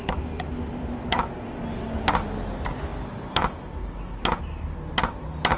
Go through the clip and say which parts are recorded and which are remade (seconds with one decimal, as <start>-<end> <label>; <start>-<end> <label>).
0.0-5.6 recorded